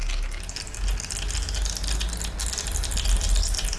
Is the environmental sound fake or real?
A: real